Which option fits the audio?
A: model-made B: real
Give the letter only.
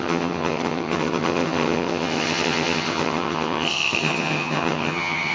A